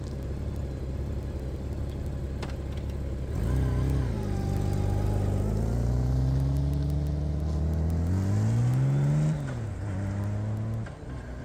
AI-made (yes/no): no